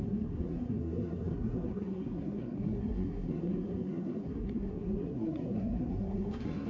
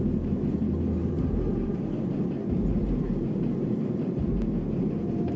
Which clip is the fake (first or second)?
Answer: first